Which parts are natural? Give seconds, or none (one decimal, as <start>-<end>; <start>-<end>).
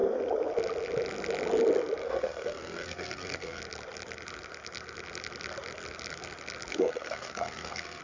0.0-2.0; 3.6-6.7